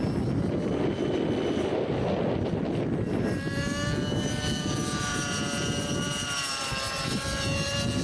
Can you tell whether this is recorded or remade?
recorded